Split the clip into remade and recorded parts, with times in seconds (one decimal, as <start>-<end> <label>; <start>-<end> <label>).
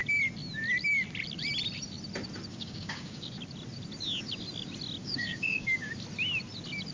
0.0-2.5 recorded; 2.5-3.3 remade; 3.3-5.0 recorded; 5.0-5.9 remade; 5.9-6.9 recorded